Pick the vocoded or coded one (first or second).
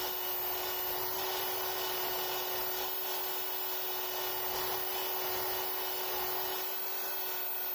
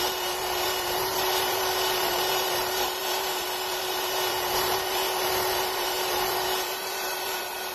second